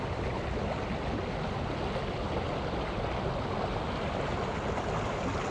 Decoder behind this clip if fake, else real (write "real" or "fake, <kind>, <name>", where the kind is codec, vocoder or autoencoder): real